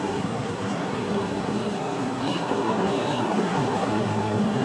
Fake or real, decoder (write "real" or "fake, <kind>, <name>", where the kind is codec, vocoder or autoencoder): fake, codec, SNAC